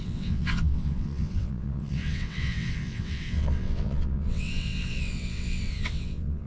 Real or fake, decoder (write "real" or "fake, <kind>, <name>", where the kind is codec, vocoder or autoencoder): fake, vocoder, WaveNeXt